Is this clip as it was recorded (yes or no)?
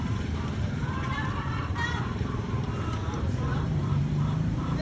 no